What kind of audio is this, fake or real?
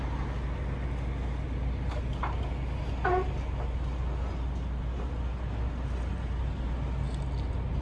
real